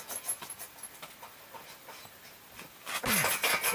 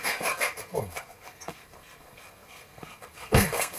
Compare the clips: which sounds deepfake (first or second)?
second